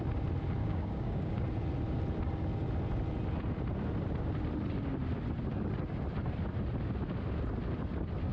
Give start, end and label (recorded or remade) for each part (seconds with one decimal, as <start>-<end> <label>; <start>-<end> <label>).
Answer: 0.0-0.6 recorded; 0.6-1.4 remade; 1.4-8.3 recorded